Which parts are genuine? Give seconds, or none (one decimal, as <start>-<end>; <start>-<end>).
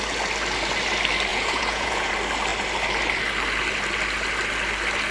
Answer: 0.0-1.3; 2.1-5.1